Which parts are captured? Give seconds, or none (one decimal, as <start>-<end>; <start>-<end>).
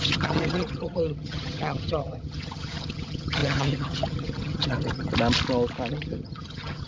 5.1-5.9